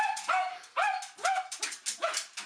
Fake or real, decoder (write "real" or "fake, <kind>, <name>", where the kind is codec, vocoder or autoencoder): real